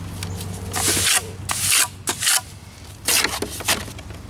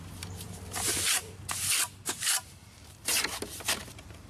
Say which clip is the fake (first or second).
second